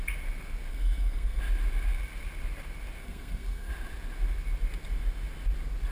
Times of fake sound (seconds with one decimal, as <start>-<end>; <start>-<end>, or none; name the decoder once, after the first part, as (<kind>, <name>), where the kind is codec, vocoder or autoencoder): 0.7-1.4 (codec, SNAC); 3.0-3.7